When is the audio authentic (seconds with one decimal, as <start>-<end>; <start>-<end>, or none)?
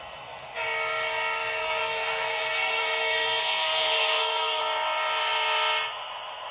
0.0-1.6; 4.6-6.5